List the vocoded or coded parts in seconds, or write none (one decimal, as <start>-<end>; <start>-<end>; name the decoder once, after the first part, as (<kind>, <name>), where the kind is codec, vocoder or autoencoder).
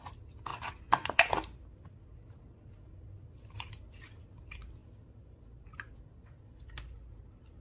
none